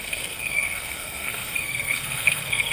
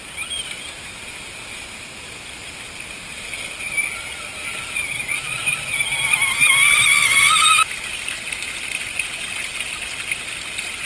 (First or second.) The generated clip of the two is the first